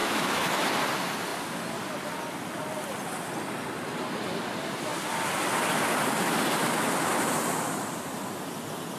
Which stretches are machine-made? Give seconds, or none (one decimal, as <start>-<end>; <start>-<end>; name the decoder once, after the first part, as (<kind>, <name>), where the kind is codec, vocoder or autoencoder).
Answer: 0.0-0.6 (autoencoder, DAC-VAE)